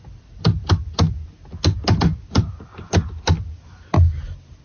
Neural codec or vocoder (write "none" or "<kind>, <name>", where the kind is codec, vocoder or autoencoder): none